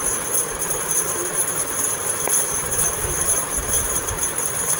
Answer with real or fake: fake